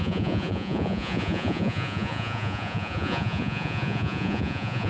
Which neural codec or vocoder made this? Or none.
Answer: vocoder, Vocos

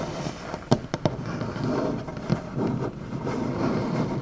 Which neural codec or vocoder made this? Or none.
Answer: vocoder, BigVGAN v2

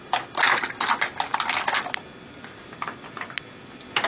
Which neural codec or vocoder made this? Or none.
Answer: none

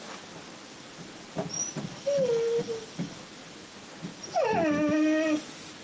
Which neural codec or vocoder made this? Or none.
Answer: none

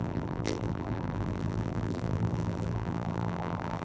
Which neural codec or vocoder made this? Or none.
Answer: vocoder, BigVGAN v2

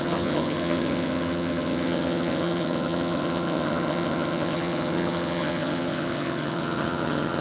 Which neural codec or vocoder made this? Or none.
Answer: vocoder, HiFi-GAN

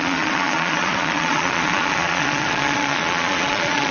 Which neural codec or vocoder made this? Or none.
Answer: vocoder, Vocos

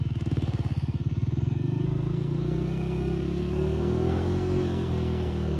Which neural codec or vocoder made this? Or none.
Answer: codec, SNAC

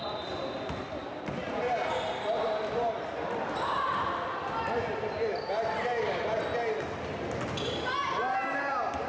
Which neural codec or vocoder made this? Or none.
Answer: none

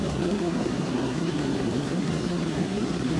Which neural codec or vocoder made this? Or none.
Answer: codec, SNAC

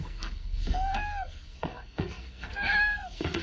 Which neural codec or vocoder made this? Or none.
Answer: codec, SNAC